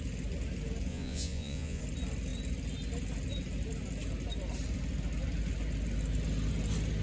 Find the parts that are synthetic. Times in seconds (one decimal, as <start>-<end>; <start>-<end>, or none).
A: 0.9-1.8